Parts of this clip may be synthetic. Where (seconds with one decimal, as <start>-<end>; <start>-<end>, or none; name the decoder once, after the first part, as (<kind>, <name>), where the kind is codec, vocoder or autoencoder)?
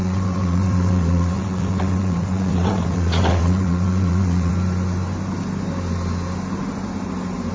0.0-4.5 (vocoder, WaveNeXt)